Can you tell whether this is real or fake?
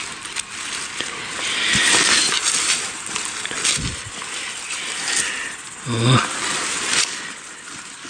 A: real